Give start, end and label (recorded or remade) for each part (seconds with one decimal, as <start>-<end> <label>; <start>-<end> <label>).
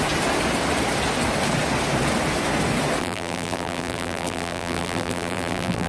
0.0-3.0 recorded; 3.0-5.9 remade